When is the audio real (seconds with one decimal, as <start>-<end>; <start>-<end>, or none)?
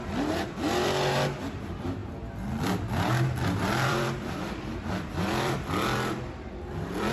2.0-2.6